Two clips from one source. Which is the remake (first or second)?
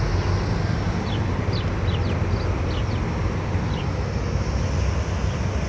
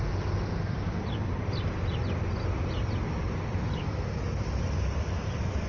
second